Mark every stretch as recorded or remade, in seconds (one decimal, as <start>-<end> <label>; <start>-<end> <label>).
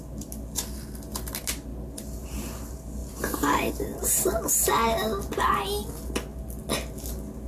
0.0-7.5 recorded